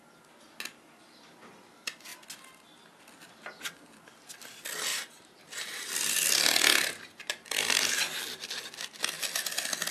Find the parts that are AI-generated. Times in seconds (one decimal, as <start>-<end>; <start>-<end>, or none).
4.9-5.4